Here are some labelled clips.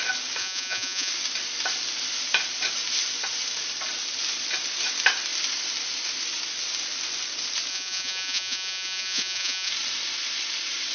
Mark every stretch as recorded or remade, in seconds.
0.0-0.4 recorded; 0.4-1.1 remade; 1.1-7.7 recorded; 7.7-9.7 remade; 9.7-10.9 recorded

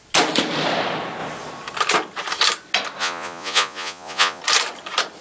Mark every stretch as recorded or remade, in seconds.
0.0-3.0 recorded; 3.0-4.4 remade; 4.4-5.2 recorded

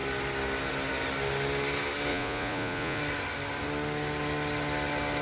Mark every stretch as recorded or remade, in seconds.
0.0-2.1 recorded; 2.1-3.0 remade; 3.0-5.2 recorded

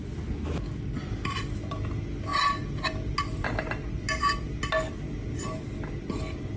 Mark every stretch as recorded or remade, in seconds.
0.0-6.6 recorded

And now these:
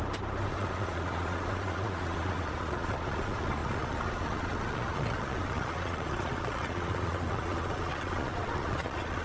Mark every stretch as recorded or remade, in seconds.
0.0-0.5 recorded; 0.5-9.2 remade

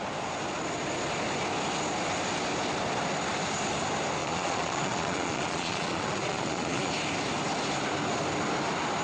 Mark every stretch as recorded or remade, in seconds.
0.0-4.2 recorded; 4.2-6.9 remade; 6.9-9.0 recorded

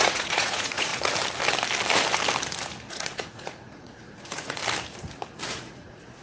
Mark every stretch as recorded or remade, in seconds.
0.0-0.9 remade; 0.9-2.9 recorded; 2.9-4.6 remade; 4.6-5.5 recorded; 5.5-6.2 remade